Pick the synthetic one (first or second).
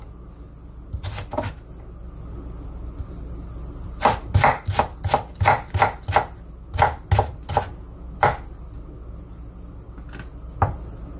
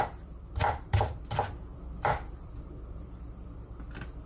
second